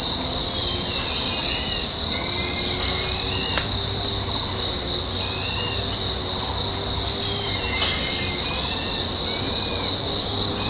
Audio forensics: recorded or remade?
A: recorded